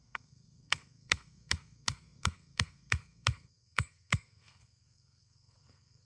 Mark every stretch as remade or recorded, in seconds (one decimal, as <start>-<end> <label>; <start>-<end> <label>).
0.0-6.1 remade